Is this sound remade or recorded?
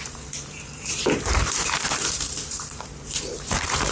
remade